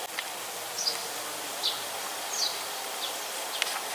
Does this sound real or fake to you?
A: real